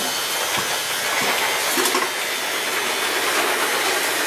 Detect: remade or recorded recorded